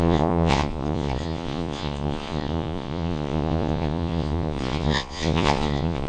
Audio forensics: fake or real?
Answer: fake